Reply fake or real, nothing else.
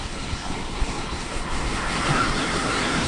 fake